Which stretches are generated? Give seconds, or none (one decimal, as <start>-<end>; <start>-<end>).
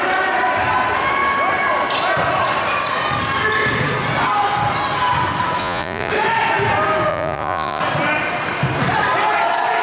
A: 5.6-6.1; 7.1-7.8